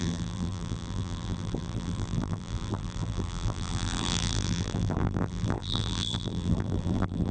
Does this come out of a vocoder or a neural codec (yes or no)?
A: yes